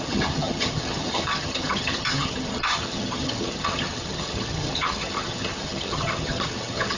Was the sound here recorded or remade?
remade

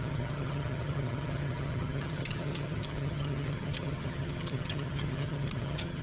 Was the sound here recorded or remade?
remade